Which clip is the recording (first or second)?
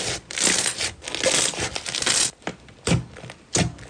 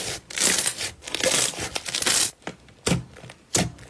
first